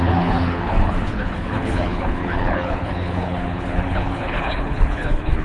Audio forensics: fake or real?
fake